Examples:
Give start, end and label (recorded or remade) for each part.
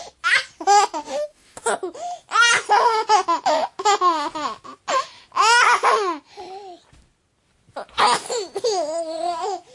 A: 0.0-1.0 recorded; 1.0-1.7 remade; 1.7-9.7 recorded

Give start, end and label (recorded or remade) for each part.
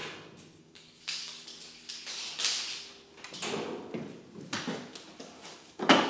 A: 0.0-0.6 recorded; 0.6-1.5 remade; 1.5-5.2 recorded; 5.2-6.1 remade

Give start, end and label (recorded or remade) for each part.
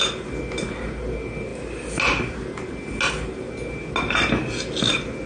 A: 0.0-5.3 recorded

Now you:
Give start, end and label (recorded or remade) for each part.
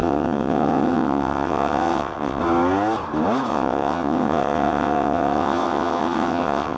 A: 0.0-2.4 remade; 2.4-3.5 recorded; 3.5-6.8 remade